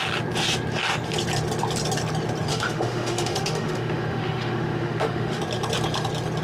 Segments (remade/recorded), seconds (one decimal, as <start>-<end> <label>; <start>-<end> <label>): 0.0-2.5 recorded; 2.5-5.4 remade; 5.4-6.4 recorded